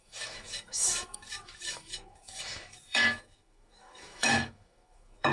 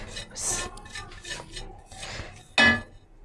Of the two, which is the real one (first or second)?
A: second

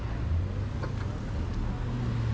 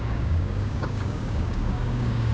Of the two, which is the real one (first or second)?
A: first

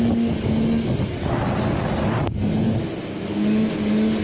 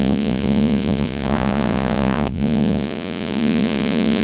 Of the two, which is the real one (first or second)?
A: first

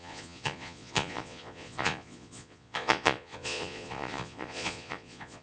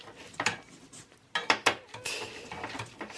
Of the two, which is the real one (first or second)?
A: second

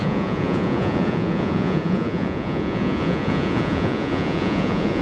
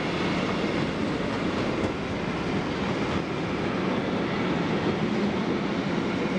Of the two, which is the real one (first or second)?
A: second